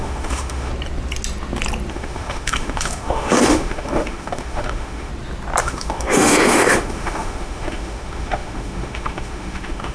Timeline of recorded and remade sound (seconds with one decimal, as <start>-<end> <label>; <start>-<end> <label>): 0.0-0.7 remade; 0.7-1.9 recorded; 1.9-5.1 remade; 5.1-5.6 recorded; 5.6-9.9 remade